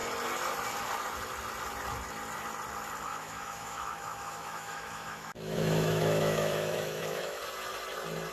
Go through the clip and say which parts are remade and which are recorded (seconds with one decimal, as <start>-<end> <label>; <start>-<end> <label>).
0.0-3.1 recorded; 3.1-7.4 remade; 7.4-8.3 recorded